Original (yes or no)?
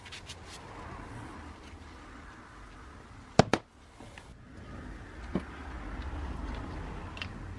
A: yes